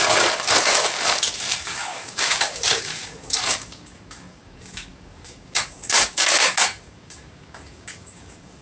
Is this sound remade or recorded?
remade